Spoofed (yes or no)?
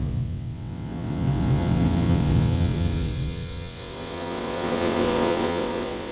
yes